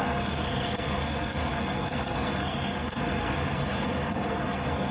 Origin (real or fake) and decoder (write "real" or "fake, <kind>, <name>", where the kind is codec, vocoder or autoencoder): fake, codec, SNAC